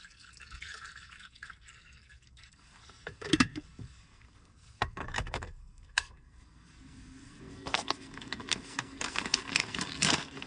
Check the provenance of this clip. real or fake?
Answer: fake